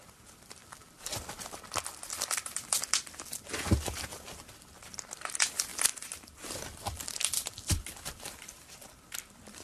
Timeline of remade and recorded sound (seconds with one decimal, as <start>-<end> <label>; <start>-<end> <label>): 0.0-0.6 remade; 0.6-3.5 recorded; 3.5-9.6 remade